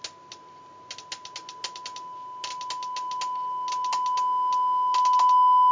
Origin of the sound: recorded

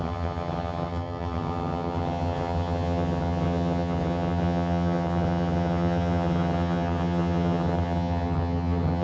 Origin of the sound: remade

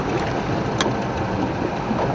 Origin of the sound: recorded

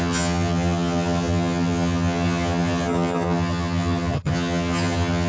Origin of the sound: remade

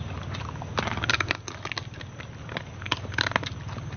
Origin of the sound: recorded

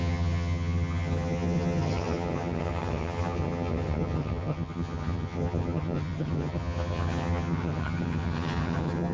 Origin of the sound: remade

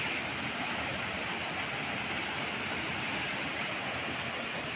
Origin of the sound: recorded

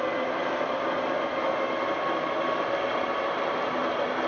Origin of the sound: recorded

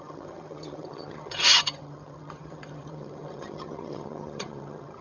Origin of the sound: remade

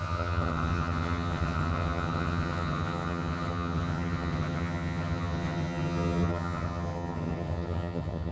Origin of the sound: remade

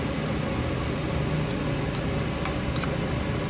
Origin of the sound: recorded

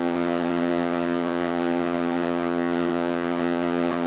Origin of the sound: remade